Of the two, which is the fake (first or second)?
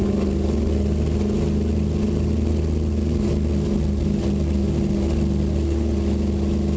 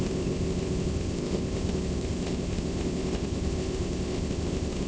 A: second